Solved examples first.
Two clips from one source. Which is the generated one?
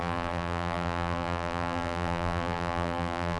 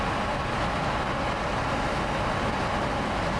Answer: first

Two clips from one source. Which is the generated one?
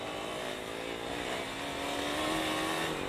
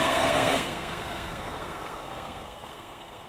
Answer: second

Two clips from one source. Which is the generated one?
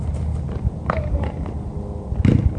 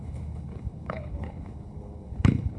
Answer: second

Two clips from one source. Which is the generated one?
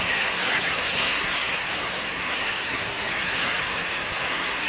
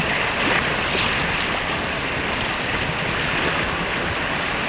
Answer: first